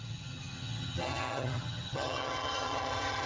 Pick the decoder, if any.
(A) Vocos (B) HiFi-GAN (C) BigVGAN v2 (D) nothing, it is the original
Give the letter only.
B